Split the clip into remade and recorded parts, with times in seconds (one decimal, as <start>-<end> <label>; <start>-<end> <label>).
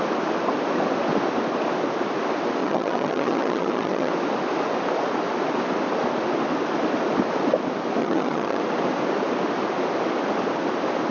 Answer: 0.0-2.6 recorded; 2.6-4.1 remade; 4.1-8.0 recorded; 8.0-8.6 remade; 8.6-11.1 recorded